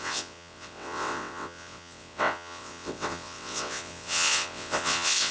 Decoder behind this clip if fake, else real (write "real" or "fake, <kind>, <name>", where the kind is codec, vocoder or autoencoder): fake, vocoder, WaveNeXt